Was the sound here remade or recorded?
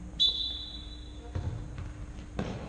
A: recorded